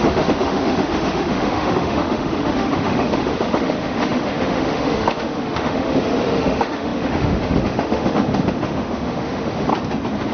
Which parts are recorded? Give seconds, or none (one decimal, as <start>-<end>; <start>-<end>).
9.7-10.3

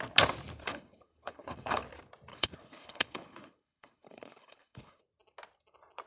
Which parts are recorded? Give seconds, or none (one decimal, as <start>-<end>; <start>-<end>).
0.0-0.6; 1.8-2.3; 5.0-6.1

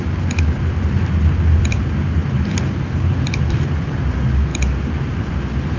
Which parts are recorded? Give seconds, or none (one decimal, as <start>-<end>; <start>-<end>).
4.5-5.1

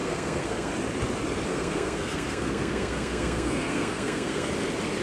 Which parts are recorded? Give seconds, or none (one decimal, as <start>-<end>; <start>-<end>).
0.7-1.5; 4.5-5.0